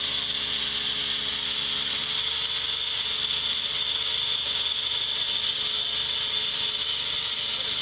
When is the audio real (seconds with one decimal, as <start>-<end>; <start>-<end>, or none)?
0.0-7.8